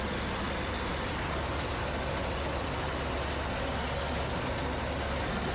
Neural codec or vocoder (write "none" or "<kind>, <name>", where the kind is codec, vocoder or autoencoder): none